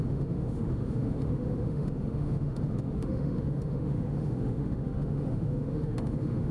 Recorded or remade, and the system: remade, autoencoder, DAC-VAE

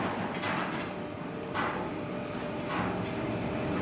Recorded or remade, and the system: recorded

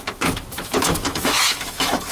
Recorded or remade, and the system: remade, autoencoder, DAC-VAE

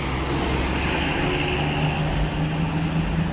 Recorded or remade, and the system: recorded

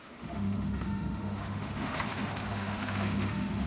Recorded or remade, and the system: remade, autoencoder, DAC-VAE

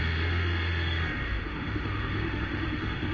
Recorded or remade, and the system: remade, autoencoder, DAC-VAE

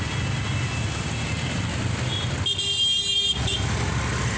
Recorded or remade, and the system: recorded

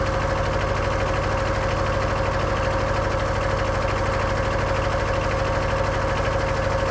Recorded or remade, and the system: recorded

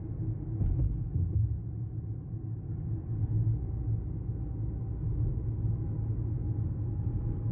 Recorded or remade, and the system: recorded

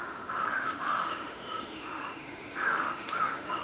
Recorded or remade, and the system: remade, autoencoder, DAC-VAE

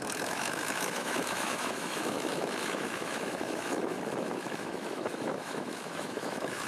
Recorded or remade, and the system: remade, autoencoder, DAC-VAE